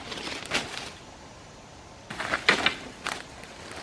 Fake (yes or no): no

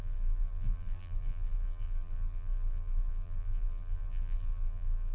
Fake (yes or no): yes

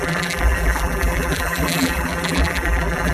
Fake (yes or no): yes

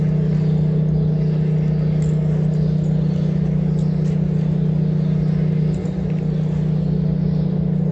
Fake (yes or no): no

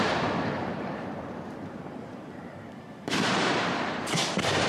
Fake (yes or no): yes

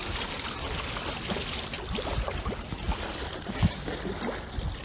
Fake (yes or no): yes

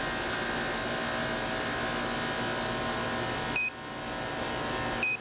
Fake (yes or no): no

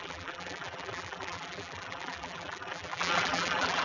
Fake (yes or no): yes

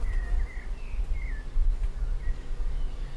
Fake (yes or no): no